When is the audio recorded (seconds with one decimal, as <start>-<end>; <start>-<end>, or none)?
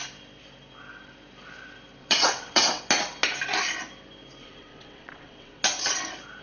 0.0-2.0; 2.8-4.4; 5.6-6.4